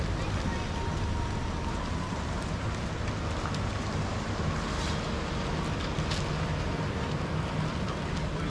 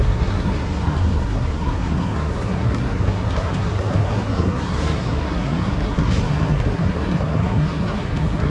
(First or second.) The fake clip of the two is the second